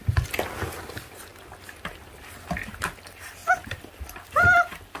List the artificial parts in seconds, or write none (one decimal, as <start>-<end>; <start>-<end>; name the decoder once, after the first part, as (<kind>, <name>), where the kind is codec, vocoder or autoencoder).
none